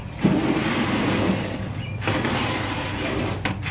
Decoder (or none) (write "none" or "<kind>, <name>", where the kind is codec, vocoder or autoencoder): none